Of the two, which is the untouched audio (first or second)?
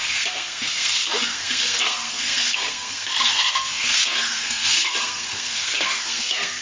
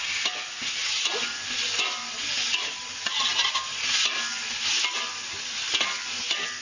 second